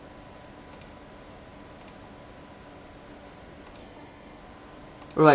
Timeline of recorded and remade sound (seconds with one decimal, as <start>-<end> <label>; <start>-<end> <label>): 0.0-3.8 recorded; 3.8-4.4 remade; 4.4-5.3 recorded